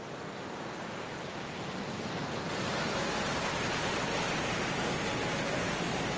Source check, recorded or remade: recorded